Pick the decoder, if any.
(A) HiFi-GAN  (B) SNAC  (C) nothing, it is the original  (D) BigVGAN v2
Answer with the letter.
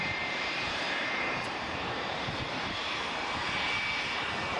D